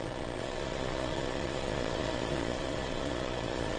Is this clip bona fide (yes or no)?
no